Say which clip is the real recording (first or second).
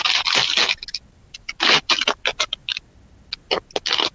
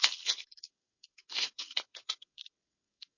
first